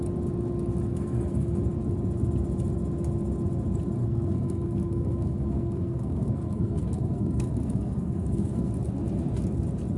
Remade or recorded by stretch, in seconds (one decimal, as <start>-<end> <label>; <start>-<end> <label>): 0.0-0.9 recorded; 0.9-1.6 remade; 1.6-4.0 recorded; 4.0-8.7 remade; 8.7-10.0 recorded